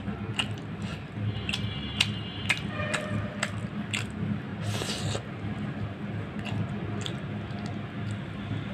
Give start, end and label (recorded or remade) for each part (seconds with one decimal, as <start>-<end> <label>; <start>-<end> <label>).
0.0-8.7 recorded